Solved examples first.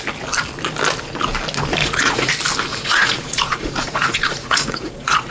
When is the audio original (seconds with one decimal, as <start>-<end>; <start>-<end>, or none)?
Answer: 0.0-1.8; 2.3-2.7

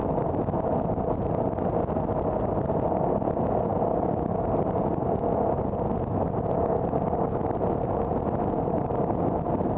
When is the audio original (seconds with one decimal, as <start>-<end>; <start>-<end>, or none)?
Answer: 0.0-9.8

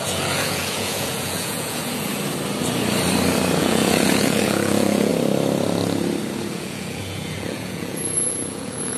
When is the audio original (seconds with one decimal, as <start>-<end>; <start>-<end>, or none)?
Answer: 2.1-3.6; 5.1-6.5

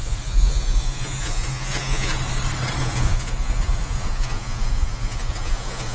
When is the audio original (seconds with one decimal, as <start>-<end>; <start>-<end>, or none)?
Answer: 2.1-2.8

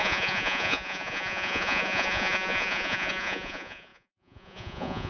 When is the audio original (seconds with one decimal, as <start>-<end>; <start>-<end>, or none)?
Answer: none